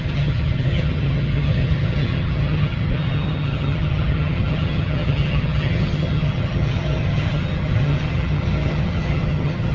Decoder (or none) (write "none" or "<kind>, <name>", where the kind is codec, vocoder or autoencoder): vocoder, HiFi-GAN